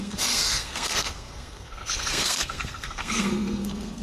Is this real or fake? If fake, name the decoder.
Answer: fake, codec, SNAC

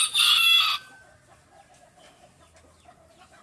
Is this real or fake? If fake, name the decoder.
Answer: real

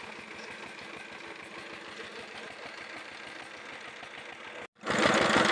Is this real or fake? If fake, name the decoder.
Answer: real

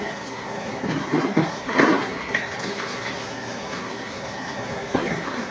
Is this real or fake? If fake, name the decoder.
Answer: fake, codec, SNAC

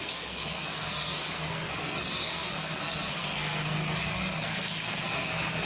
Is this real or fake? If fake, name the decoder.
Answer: fake, codec, SNAC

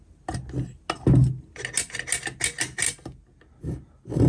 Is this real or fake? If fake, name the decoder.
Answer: real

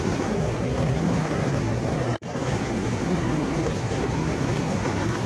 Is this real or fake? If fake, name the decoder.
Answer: fake, codec, SNAC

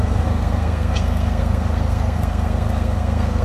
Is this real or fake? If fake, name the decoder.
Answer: fake, codec, SNAC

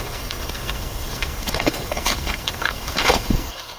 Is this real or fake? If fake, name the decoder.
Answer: fake, codec, SNAC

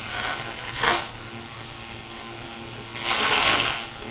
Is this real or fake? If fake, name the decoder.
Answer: fake, codec, SNAC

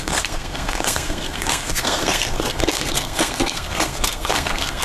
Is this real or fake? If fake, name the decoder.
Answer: fake, codec, SNAC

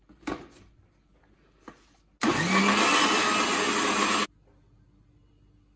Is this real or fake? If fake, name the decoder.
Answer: real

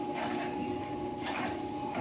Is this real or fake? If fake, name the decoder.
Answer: real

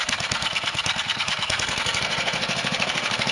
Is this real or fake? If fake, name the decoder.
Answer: fake, codec, SNAC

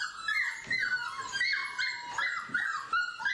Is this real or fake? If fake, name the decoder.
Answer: real